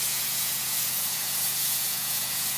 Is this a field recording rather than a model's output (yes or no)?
no